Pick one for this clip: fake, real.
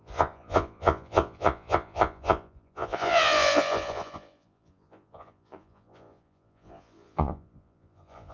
fake